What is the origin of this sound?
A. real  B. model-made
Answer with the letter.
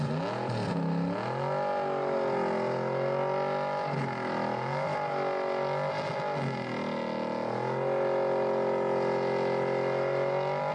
A